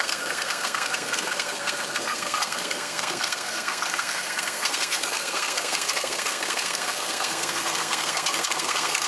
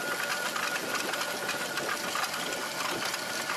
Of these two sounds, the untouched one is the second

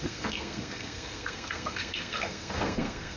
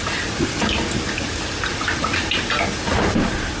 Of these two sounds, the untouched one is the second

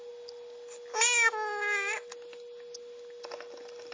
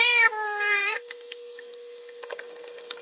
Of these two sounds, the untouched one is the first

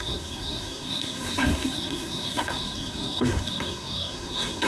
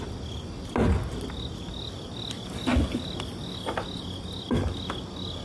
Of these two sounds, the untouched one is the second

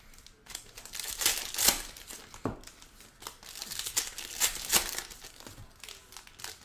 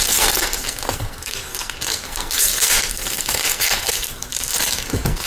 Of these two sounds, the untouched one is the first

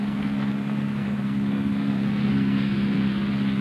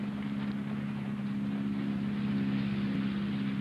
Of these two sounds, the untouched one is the second